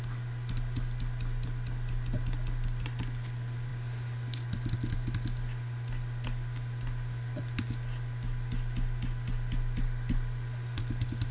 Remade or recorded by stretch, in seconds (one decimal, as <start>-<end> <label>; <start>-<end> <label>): 0.0-11.3 recorded